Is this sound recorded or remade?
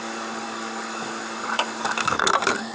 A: remade